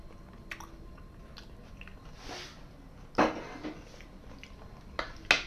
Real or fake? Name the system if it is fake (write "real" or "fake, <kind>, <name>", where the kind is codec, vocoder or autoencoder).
real